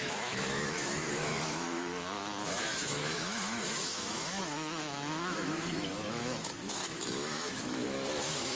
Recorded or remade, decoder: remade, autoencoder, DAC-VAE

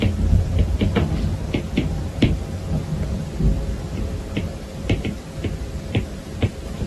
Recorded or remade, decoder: remade, vocoder, BigVGAN v2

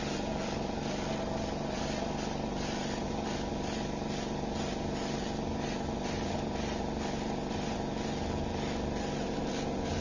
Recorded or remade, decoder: recorded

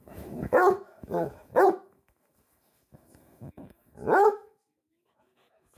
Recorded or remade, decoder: remade, autoencoder, DAC-VAE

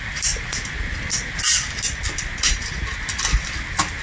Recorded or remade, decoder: recorded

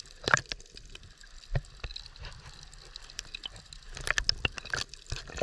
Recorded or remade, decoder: recorded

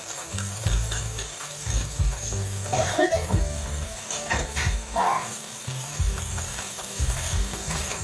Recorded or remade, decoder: remade, codec, DAC